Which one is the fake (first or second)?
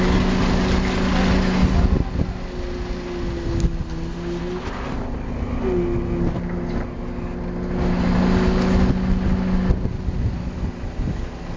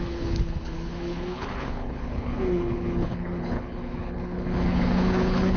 second